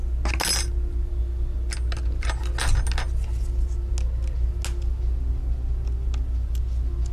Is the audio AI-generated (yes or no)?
no